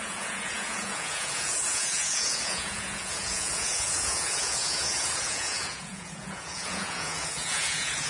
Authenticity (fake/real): fake